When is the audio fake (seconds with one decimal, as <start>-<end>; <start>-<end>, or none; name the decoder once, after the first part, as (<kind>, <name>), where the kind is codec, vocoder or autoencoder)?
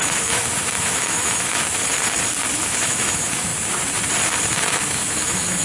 0.0-1.6 (autoencoder, DAC-VAE); 2.5-3.5; 4.5-5.6